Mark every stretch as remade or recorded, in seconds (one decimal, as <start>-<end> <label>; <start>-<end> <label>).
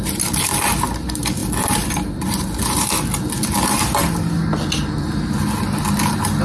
0.0-1.4 recorded; 1.4-2.9 remade; 2.9-6.4 recorded